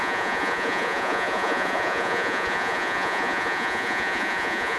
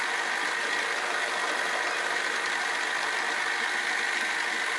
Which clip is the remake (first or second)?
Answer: first